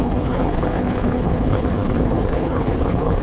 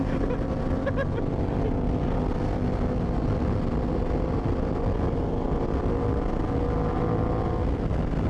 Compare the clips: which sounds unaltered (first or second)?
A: second